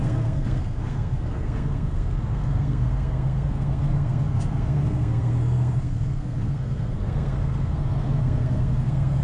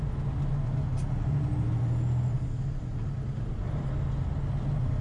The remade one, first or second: first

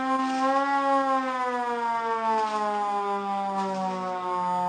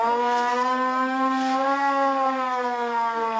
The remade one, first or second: second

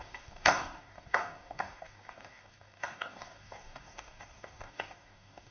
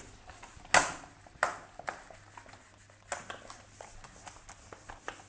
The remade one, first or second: first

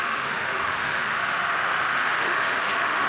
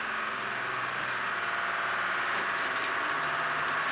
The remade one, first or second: first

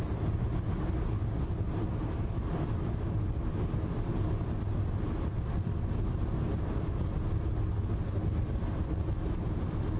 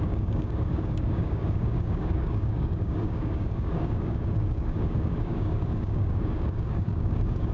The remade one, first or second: second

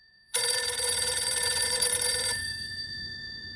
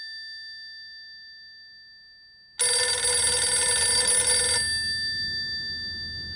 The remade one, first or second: first